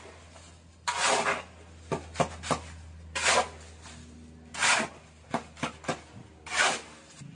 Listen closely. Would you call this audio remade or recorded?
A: recorded